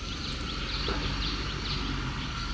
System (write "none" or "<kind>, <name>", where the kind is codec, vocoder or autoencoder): none